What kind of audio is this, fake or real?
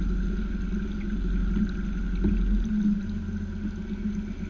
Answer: real